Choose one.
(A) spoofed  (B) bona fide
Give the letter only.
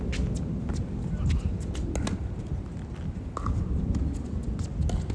B